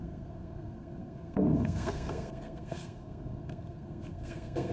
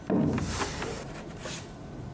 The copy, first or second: first